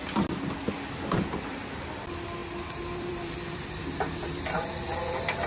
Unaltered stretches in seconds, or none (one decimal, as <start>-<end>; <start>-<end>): 0.0-2.4; 3.8-5.5